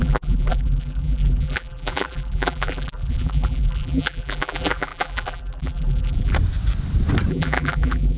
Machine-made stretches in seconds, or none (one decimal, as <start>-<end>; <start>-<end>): 0.0-6.3; 7.3-8.2